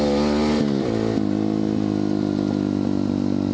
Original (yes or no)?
yes